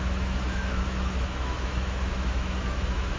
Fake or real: fake